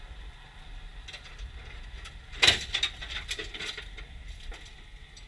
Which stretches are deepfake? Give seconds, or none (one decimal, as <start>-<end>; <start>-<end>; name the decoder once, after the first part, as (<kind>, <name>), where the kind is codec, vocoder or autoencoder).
none